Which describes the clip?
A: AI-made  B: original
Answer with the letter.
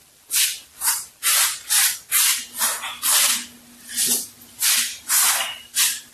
B